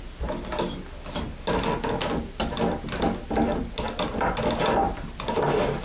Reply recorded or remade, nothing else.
recorded